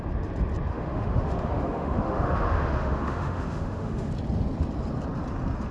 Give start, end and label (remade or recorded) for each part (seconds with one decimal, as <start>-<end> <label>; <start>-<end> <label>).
0.0-0.7 recorded; 0.7-4.1 remade; 4.1-5.7 recorded